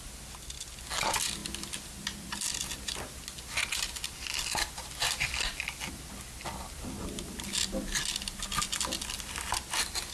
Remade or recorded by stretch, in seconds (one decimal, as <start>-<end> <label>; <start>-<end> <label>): 0.0-10.1 recorded